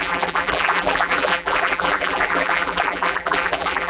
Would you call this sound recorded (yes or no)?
no